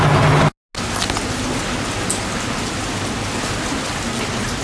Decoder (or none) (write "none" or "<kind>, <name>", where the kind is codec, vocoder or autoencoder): none